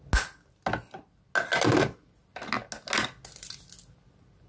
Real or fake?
real